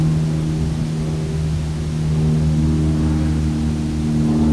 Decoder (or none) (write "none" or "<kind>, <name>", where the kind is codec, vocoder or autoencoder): none